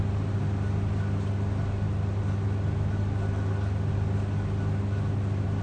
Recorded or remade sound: recorded